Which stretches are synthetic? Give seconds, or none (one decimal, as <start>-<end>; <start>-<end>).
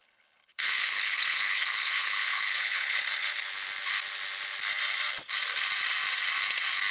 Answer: 0.0-3.0